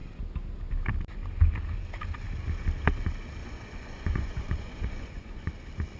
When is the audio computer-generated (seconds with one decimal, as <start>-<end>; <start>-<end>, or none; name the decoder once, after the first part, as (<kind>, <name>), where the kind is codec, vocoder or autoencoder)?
3.4-5.5 (vocoder, Vocos)